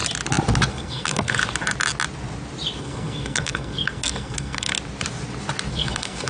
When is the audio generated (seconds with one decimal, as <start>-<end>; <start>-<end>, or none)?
0.7-1.4; 2.8-4.7; 5.7-6.3